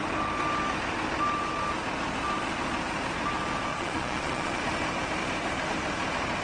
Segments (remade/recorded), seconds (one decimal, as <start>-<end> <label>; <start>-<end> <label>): 0.0-3.7 recorded; 3.7-4.6 remade; 4.6-6.4 recorded